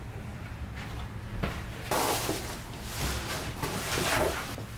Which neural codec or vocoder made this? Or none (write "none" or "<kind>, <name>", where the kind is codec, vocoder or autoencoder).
vocoder, BigVGAN v2